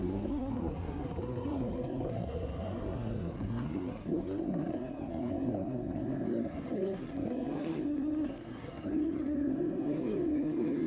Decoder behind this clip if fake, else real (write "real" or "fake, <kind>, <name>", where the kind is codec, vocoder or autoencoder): fake, codec, SNAC